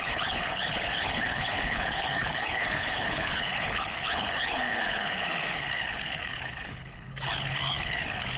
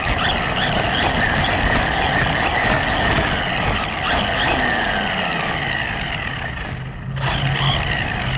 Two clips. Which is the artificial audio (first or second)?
first